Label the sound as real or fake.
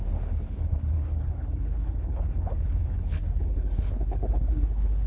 fake